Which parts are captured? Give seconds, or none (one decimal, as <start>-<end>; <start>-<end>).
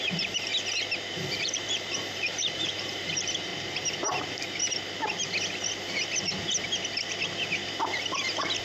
0.5-1.3; 3.5-8.6